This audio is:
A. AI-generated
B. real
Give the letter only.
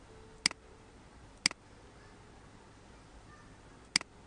B